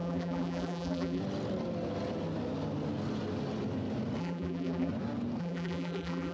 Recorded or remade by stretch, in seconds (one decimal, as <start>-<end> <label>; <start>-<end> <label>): 0.0-1.2 remade; 1.2-4.2 recorded; 4.2-4.9 remade; 4.9-5.4 recorded; 5.4-6.3 remade